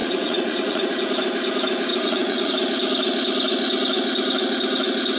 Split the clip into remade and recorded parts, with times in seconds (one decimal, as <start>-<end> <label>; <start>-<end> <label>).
0.0-0.9 remade; 0.9-1.9 recorded; 1.9-2.5 remade; 2.5-5.2 recorded